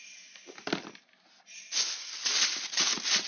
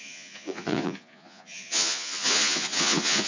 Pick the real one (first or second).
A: first